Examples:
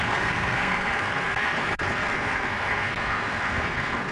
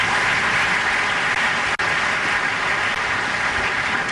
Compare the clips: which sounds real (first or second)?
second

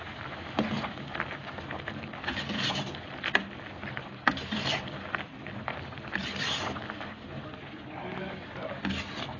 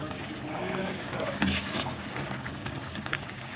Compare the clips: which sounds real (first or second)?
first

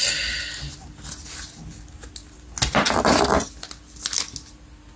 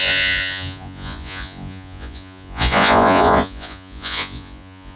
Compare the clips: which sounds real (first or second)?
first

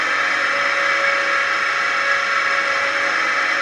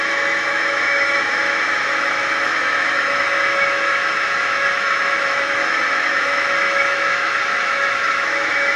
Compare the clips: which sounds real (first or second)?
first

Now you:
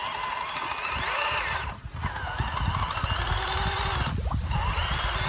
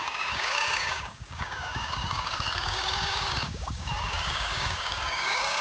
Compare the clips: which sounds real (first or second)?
first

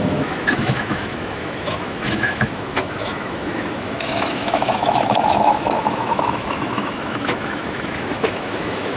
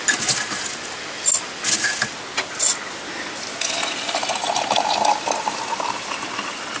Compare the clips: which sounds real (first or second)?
second